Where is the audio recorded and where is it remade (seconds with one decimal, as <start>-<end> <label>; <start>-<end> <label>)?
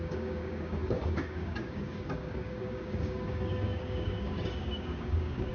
0.0-5.5 remade